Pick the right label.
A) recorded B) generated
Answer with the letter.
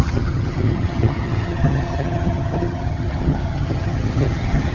B